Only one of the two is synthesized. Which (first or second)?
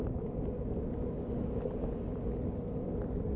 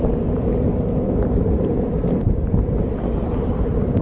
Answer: second